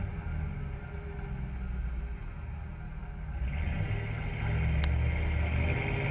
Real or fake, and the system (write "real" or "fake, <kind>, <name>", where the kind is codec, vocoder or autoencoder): real